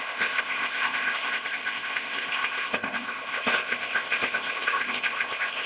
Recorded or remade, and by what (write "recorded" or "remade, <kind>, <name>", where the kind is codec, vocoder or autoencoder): remade, codec, ZipCodec